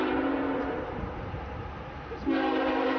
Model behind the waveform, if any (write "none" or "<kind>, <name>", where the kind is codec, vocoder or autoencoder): vocoder, BigVGAN v2